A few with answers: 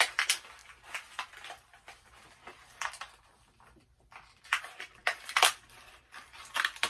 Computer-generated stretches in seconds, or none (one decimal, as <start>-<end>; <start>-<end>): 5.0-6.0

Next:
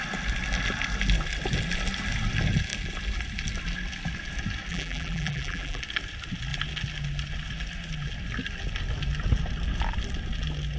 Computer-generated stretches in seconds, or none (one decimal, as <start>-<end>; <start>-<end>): 4.7-5.8

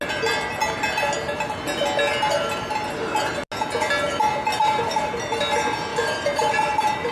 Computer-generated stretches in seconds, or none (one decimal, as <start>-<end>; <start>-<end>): 4.6-5.4; 5.9-7.1